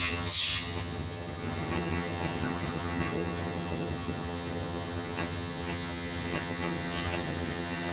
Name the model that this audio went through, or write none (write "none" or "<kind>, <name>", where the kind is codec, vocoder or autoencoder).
vocoder, HiFi-GAN